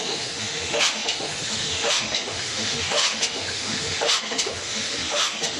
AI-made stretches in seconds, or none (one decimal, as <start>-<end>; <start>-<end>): 0.0-5.6